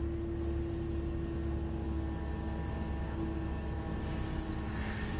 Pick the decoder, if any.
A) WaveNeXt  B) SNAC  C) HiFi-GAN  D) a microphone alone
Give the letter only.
D